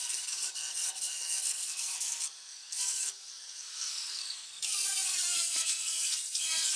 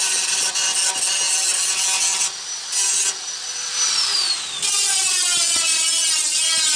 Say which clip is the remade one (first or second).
first